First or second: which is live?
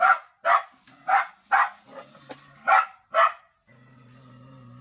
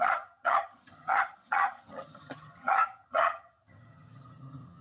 first